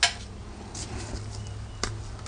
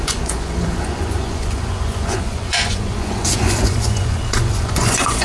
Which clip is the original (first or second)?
first